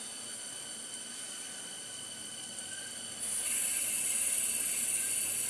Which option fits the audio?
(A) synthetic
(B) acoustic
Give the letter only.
B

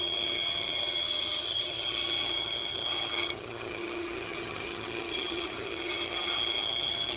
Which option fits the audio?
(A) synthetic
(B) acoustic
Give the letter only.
A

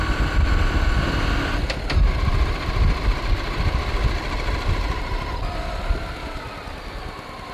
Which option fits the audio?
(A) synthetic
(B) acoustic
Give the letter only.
B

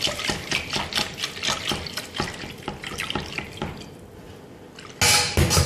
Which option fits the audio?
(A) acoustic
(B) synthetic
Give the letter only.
A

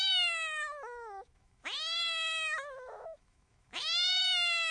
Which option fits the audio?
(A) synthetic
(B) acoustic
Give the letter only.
A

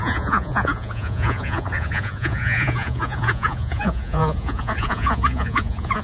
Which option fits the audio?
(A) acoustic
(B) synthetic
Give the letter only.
B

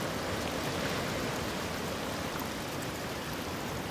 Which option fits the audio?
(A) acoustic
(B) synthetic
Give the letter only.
A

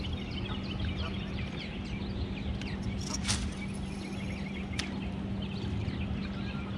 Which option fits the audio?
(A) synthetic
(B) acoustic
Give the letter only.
B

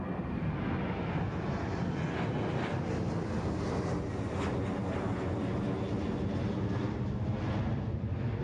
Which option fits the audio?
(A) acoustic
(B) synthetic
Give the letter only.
A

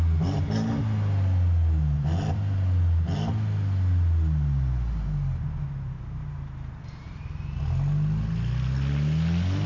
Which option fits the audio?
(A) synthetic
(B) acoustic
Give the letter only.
B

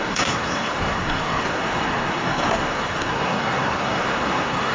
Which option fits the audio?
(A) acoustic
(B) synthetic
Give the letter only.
B